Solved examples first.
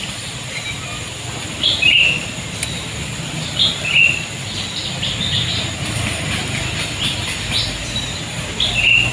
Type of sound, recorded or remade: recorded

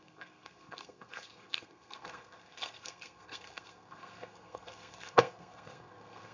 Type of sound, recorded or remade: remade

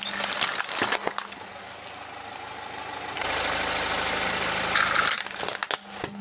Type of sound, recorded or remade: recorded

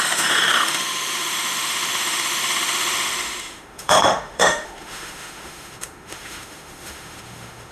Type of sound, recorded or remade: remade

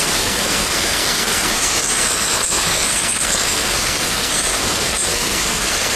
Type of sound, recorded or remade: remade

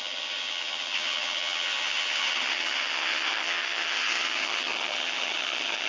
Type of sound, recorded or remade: remade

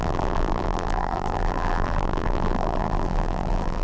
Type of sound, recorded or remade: remade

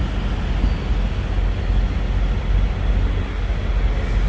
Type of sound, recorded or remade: recorded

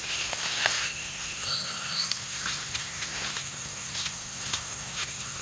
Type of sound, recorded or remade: remade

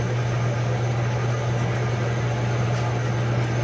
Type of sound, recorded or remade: recorded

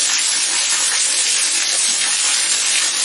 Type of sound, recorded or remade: recorded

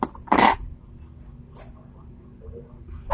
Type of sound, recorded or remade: recorded